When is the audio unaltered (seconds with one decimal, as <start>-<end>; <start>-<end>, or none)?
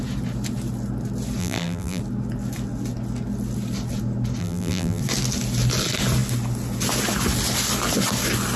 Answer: 0.0-1.4; 2.0-4.4; 5.0-8.6